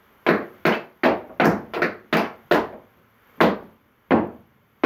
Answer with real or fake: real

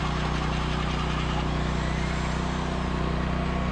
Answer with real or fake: real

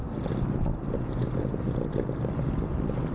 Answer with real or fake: real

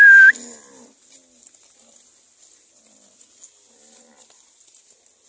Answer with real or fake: real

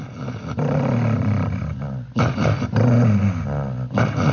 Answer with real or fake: real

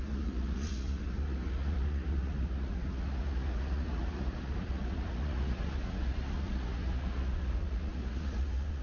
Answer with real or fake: fake